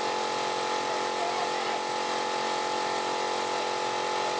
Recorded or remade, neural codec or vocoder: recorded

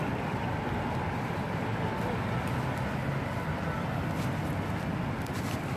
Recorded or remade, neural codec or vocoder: recorded